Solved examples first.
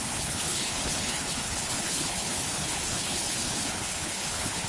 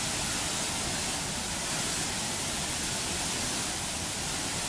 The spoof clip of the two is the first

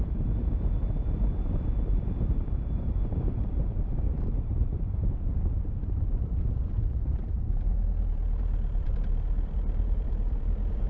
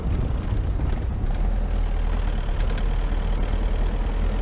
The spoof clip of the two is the first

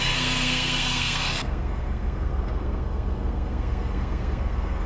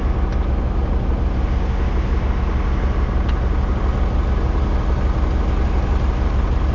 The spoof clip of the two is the first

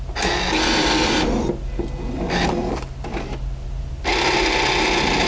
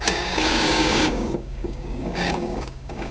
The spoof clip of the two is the second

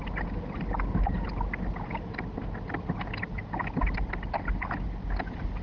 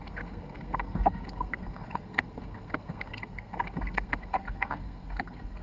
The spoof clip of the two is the second